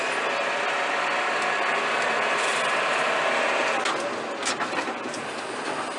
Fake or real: real